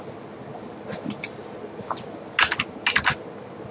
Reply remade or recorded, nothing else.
recorded